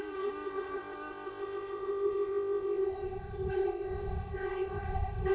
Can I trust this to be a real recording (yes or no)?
no